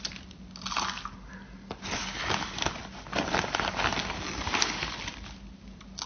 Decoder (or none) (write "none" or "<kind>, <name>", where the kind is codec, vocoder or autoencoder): none